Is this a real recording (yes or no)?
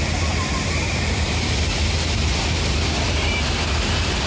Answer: yes